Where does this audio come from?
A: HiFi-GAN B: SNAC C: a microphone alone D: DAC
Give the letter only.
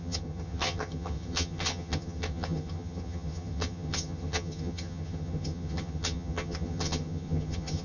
A